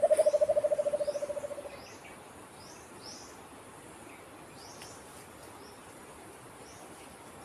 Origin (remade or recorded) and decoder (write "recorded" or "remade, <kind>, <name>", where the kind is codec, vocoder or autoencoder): recorded